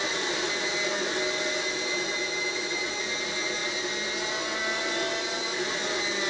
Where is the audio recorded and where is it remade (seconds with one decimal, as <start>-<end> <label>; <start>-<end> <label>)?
0.0-6.3 recorded